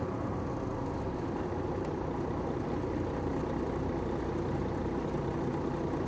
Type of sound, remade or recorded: recorded